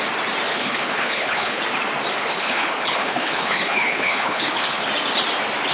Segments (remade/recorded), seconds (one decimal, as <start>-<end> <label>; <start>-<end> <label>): 0.0-0.5 recorded; 0.5-1.6 remade; 1.6-2.2 recorded; 2.2-4.9 remade; 4.9-5.7 recorded